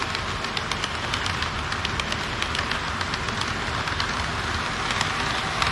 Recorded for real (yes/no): yes